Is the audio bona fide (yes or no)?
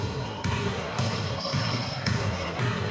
no